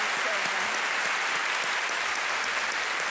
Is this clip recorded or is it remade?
recorded